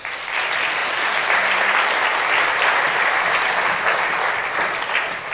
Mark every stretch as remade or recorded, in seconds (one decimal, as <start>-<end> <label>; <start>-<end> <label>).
0.0-5.3 recorded